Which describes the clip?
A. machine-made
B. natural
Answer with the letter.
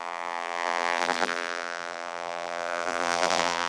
A